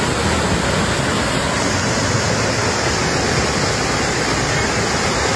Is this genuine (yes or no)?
yes